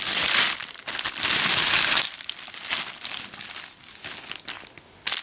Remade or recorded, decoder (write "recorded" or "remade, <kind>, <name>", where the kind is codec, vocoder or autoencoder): recorded